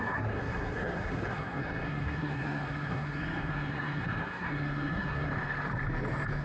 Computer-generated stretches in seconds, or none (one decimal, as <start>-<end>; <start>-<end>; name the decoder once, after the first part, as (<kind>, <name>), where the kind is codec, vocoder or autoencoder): 0.0-5.3 (codec, SNAC)